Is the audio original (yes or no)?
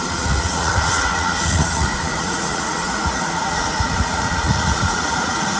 no